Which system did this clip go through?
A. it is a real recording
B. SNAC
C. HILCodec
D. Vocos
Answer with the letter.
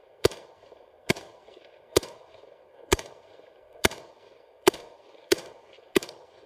B